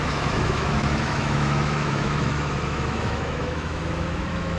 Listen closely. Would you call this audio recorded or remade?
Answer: remade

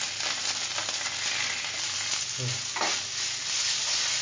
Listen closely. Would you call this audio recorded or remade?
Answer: recorded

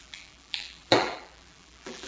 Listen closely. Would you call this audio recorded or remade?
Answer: remade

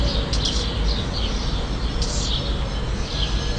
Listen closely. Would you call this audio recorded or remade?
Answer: recorded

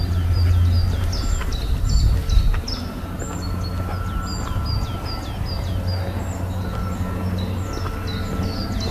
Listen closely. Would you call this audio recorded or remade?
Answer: recorded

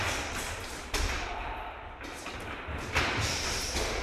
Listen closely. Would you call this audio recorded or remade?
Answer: recorded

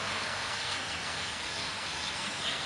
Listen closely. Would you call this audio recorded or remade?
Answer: remade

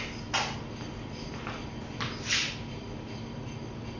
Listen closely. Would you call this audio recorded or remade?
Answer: recorded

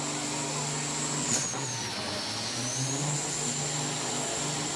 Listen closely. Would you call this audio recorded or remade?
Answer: recorded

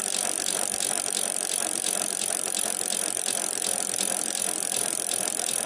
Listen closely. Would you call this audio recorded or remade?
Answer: recorded